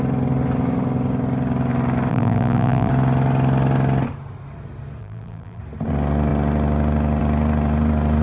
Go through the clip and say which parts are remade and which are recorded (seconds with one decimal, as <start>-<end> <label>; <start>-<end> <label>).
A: 0.0-2.1 recorded; 2.1-2.9 remade; 2.9-5.0 recorded; 5.0-5.6 remade; 5.6-8.2 recorded